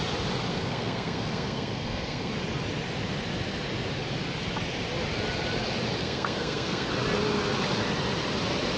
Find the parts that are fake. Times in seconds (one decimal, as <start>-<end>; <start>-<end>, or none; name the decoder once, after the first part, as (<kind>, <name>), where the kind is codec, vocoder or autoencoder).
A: 0.5-2.3 (codec, SNAC); 6.0-6.9